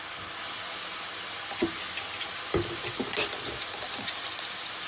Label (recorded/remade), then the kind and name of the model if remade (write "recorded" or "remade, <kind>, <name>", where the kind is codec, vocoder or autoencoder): recorded